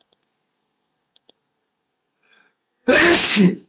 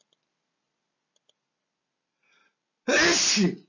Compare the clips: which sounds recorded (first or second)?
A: second